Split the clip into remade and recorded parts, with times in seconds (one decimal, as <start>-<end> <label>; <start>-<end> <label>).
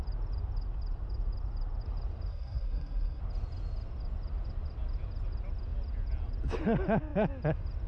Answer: 0.0-2.3 recorded; 2.3-3.2 remade; 3.2-7.9 recorded